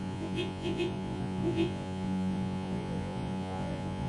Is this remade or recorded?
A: remade